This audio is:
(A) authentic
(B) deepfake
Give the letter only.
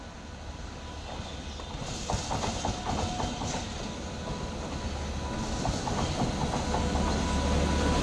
A